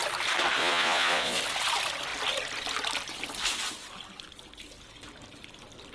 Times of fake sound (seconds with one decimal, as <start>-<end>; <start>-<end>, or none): 0.6-1.4